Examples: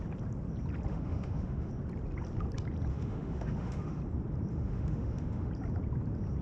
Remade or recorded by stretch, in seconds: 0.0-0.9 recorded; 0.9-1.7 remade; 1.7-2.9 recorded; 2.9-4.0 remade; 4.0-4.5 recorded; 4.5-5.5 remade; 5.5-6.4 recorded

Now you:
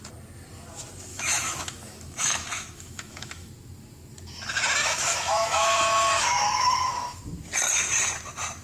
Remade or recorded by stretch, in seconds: 0.0-1.1 recorded; 1.1-3.5 remade; 3.5-4.8 recorded; 4.8-7.2 remade; 7.2-8.6 recorded